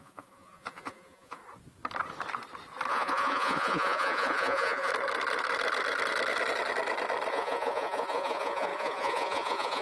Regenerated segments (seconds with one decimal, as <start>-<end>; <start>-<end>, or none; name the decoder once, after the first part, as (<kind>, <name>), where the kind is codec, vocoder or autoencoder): 0.0-1.4 (vocoder, Vocos); 2.9-4.9; 7.3-9.8